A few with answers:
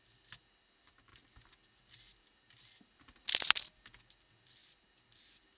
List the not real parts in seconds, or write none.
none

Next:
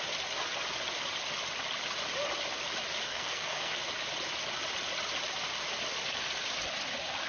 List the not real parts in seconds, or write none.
3.1-3.7 (codec, SNAC)

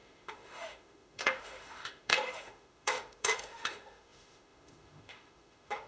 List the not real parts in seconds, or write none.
0.0-5.9 (autoencoder, DAC-VAE)

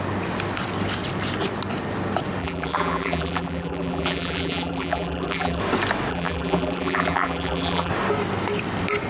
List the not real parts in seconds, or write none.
2.4-5.6 (vocoder, BigVGAN v2); 6.1-7.9

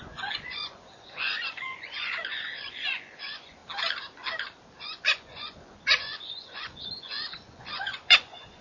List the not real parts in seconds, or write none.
0.0-3.6 (vocoder, Vocos); 4.8-8.6

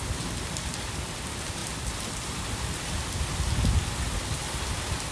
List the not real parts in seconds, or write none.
none

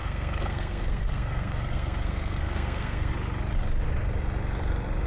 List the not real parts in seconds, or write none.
0.0-3.1 (codec, SNAC)